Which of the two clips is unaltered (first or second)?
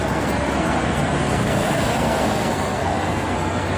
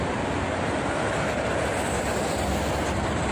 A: second